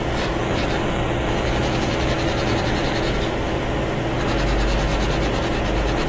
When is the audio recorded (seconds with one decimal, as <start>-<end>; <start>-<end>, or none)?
0.0-0.4; 3.0-6.1